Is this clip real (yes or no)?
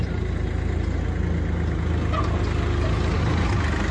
yes